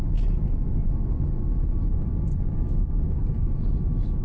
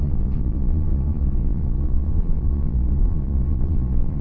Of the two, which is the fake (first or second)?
second